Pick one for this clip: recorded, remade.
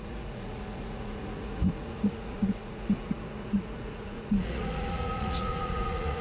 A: remade